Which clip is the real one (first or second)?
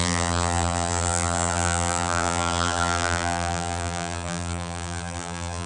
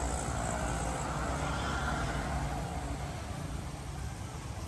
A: second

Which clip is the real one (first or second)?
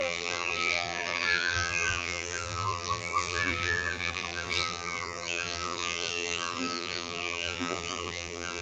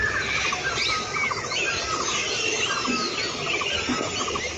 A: second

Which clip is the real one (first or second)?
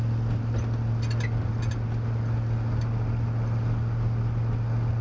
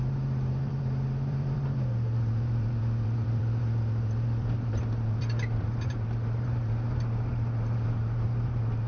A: first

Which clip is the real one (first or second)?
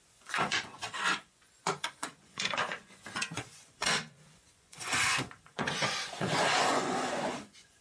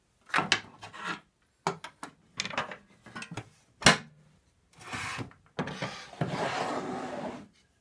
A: second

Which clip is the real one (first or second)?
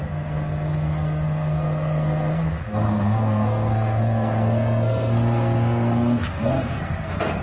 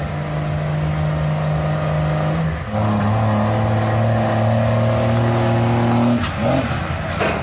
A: second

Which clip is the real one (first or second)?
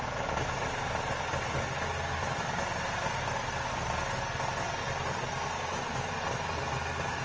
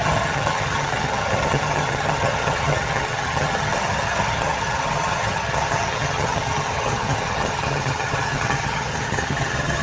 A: first